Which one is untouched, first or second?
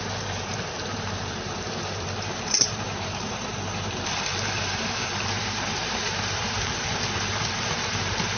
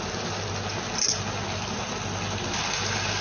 second